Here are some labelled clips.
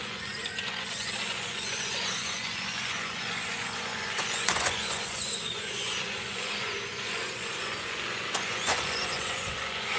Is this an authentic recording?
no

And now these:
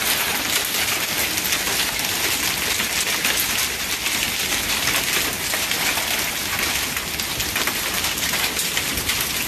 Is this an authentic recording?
yes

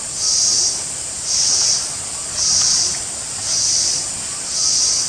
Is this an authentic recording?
yes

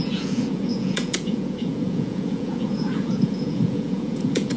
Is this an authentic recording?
no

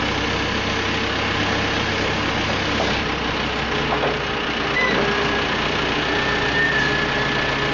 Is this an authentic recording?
yes